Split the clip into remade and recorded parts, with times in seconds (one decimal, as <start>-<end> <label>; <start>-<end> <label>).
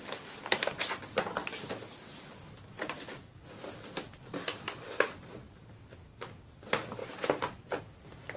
0.0-8.4 recorded